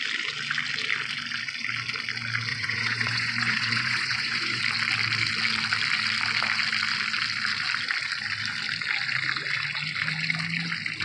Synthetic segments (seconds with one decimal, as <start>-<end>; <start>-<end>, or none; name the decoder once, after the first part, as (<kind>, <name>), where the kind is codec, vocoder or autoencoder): 2.5-4.6 (vocoder, Vocos)